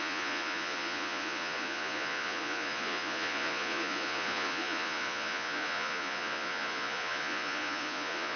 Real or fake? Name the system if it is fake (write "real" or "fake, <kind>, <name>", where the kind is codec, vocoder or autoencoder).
fake, vocoder, Vocos